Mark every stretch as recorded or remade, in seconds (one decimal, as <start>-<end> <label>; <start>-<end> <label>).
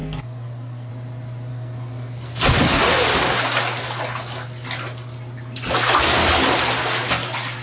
0.0-0.9 remade; 0.9-1.5 recorded; 1.5-2.4 remade; 2.4-7.6 recorded